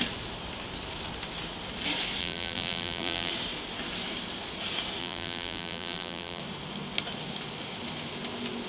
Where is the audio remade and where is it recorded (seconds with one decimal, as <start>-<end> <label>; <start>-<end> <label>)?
0.0-2.2 recorded; 2.2-3.3 remade; 3.3-5.0 recorded; 5.0-6.4 remade; 6.4-8.7 recorded